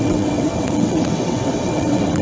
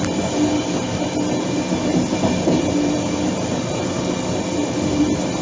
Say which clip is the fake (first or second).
first